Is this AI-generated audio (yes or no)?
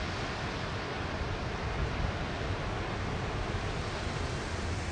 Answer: no